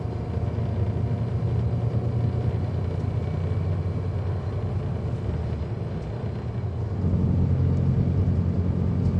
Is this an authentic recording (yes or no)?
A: yes